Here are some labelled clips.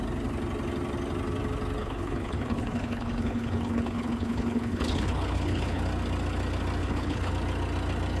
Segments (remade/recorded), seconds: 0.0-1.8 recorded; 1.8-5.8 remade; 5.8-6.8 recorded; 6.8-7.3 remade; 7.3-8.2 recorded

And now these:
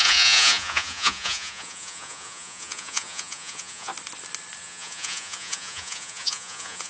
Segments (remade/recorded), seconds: 0.0-3.9 remade; 3.9-4.6 recorded; 4.6-6.9 remade

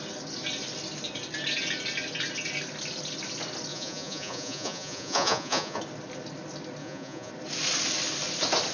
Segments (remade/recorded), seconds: 0.0-3.7 recorded; 3.7-5.8 remade; 5.8-6.8 recorded; 6.8-7.3 remade; 7.3-8.7 recorded

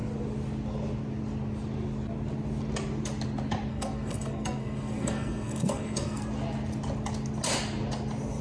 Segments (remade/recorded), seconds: 0.0-3.7 recorded; 3.7-6.2 remade; 6.2-8.4 recorded

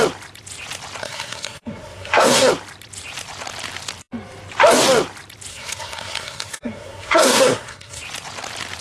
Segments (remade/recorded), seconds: 0.0-1.0 recorded; 1.0-2.5 remade; 2.5-5.5 recorded; 5.5-8.0 remade; 8.0-8.8 recorded

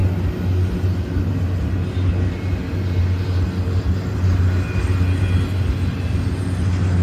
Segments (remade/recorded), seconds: 0.0-7.0 recorded

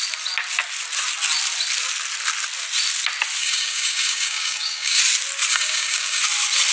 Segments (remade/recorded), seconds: 0.0-3.4 recorded; 3.4-5.0 remade; 5.0-5.5 recorded; 5.5-6.2 remade; 6.2-6.7 recorded